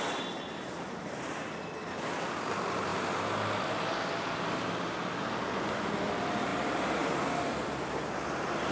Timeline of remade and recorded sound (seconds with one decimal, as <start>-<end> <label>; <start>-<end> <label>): 0.0-8.7 recorded